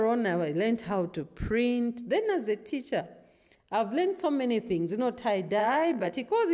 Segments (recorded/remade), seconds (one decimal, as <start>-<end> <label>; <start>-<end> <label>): 0.0-5.6 recorded; 5.6-6.1 remade; 6.1-6.5 recorded